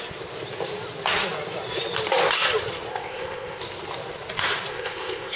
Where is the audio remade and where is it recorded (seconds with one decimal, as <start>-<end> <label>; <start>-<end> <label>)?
0.0-2.9 recorded; 2.9-3.6 remade; 3.6-4.7 recorded; 4.7-5.4 remade